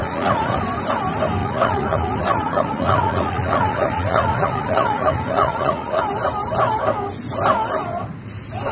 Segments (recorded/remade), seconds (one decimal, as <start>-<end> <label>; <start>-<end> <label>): 0.0-0.6 remade; 0.6-1.4 recorded; 1.4-6.0 remade; 6.0-8.7 recorded